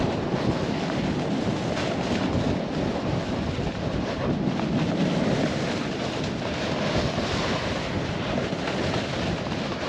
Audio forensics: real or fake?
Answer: real